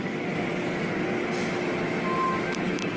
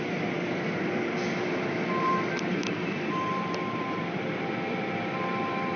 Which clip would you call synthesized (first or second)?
second